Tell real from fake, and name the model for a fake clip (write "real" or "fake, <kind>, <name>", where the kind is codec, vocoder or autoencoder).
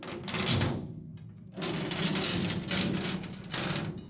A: real